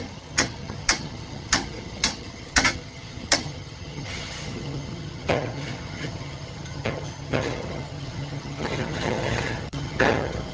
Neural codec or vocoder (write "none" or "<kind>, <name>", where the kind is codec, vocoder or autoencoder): vocoder, HiFi-GAN